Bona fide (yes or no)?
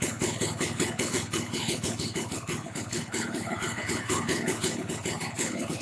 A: no